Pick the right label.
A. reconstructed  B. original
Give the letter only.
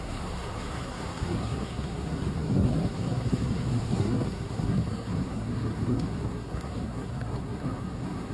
A